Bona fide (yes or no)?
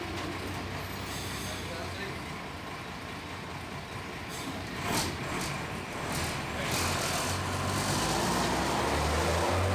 yes